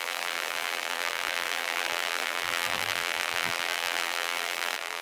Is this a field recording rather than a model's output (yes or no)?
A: no